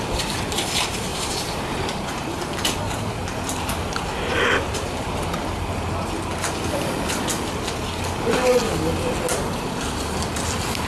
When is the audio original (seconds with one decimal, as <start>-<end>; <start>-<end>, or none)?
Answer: 0.0-1.1; 2.4-10.9